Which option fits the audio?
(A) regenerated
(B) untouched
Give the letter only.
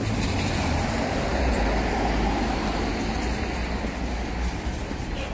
B